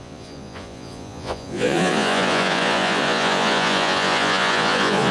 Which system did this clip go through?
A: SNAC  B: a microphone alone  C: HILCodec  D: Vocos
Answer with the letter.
D